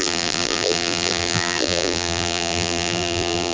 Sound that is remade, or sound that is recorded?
remade